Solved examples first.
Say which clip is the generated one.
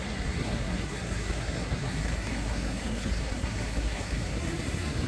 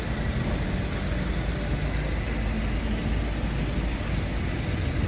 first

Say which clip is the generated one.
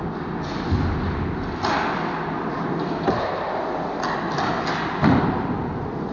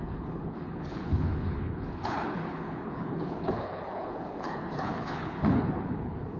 second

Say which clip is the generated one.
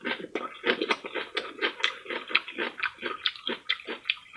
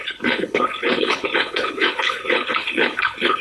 second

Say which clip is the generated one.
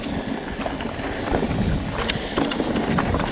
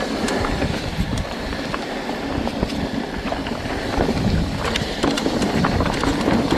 second